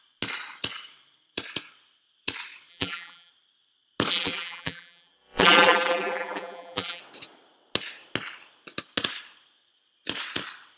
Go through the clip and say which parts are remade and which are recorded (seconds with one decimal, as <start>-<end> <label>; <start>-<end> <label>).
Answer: 0.0-2.7 recorded; 2.7-3.3 remade; 3.3-4.1 recorded; 4.1-7.0 remade; 7.0-10.8 recorded